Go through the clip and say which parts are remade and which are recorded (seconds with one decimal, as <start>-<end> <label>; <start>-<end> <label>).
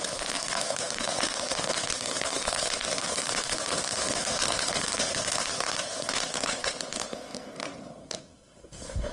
0.0-9.1 remade